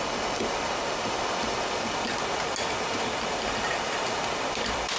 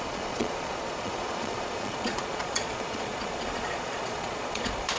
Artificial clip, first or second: second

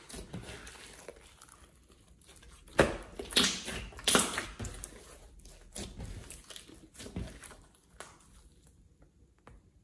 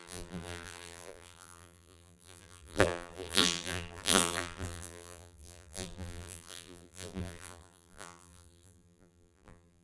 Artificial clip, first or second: second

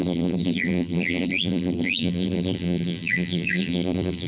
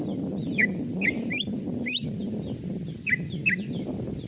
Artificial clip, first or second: first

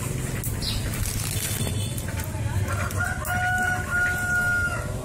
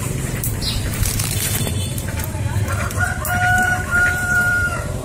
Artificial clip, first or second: second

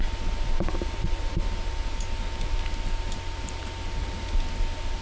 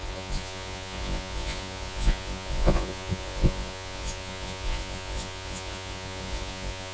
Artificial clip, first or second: second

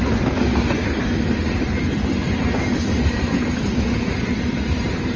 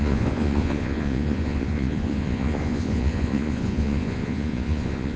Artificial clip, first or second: second